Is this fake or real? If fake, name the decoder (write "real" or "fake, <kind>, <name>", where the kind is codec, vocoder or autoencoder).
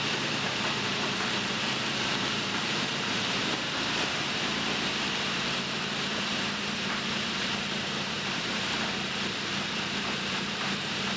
fake, vocoder, BigVGAN v2